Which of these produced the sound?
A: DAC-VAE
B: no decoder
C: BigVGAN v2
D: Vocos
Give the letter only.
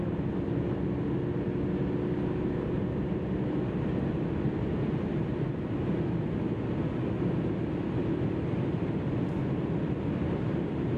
B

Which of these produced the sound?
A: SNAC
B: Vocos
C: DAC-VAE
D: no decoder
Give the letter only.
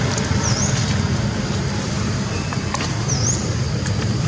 D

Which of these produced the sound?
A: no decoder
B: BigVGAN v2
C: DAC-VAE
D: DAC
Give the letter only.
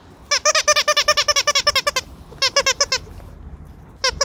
A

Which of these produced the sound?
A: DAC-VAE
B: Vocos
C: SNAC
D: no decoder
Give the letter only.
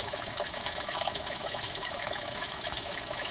A